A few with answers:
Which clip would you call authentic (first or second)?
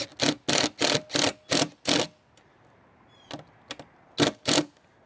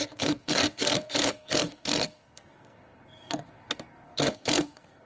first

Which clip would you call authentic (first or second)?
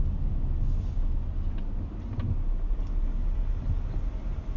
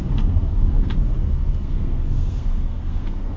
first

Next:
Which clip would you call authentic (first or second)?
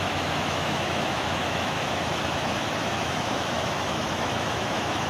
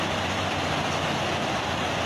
second